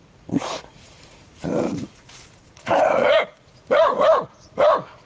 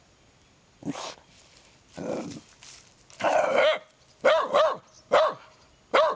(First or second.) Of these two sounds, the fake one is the first